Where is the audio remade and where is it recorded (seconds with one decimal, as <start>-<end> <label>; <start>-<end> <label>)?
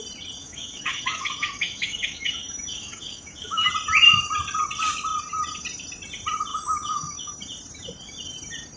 0.0-0.4 recorded; 0.4-3.7 remade; 3.7-6.5 recorded; 6.5-7.3 remade; 7.3-8.8 recorded